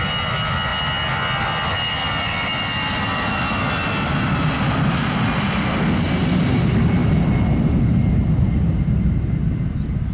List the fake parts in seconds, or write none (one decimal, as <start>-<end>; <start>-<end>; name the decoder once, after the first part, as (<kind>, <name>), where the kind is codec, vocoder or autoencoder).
none